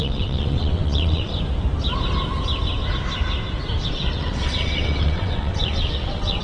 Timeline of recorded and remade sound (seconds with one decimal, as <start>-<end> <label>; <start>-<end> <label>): 0.0-1.3 remade; 1.3-3.9 recorded; 3.9-6.4 remade

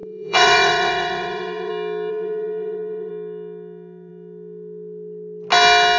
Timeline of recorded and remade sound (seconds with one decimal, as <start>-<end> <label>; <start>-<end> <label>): 0.0-1.7 remade; 1.7-2.1 recorded; 2.1-3.1 remade; 3.1-6.0 recorded

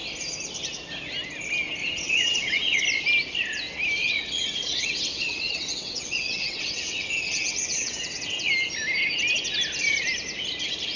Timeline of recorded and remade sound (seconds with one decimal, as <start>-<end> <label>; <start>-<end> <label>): 0.0-1.8 recorded; 1.8-2.8 remade; 2.8-4.0 recorded; 4.0-8.5 remade; 8.5-11.0 recorded

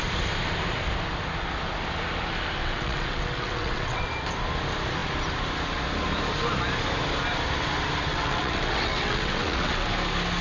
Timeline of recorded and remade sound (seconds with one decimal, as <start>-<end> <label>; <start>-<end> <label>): 0.0-2.6 recorded; 2.6-4.1 remade; 4.1-8.1 recorded; 8.1-9.9 remade; 9.9-10.4 recorded

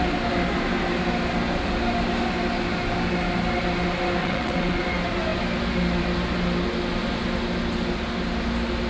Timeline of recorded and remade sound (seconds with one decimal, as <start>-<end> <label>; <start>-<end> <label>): 0.0-4.2 recorded; 4.2-4.8 remade; 4.8-8.9 recorded

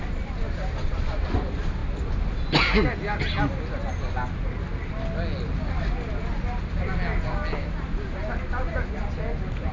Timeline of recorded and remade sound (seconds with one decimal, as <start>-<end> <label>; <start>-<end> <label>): 0.0-9.7 recorded